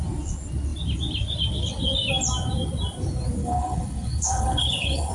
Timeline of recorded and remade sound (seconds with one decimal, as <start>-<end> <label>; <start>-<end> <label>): 0.0-3.4 recorded; 3.4-5.1 remade